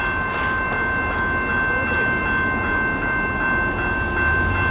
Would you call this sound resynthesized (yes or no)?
no